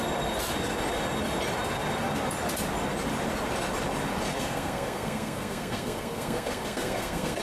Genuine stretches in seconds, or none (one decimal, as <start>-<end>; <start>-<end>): 0.0-4.3